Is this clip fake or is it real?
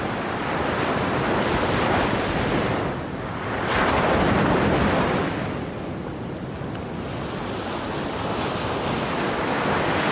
real